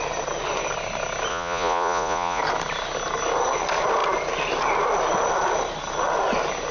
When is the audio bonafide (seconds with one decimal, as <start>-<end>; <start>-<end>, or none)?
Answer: 0.0-1.3; 2.4-6.7